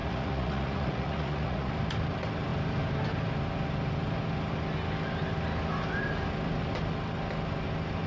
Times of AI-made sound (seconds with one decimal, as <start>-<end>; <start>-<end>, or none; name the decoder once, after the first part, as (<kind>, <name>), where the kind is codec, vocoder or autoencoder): 0.0-1.7 (vocoder, Vocos)